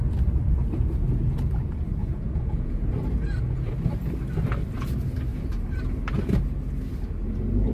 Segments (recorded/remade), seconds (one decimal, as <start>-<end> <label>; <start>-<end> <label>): 0.0-2.0 recorded; 2.0-2.9 remade; 2.9-7.7 recorded